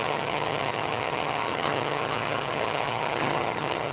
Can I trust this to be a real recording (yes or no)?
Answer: no